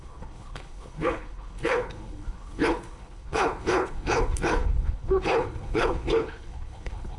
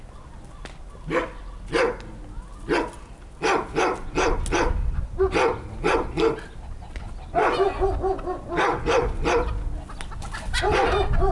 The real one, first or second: second